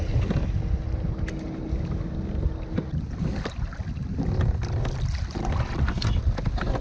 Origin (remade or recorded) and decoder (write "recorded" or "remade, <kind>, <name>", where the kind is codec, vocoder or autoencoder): recorded